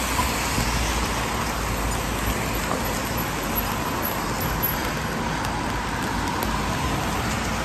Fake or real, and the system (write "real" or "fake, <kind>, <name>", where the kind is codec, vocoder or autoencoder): real